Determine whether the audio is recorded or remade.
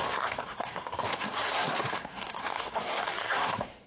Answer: remade